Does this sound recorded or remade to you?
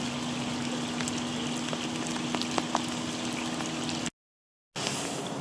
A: recorded